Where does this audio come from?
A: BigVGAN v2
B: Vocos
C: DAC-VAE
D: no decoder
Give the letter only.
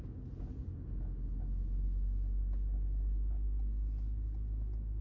D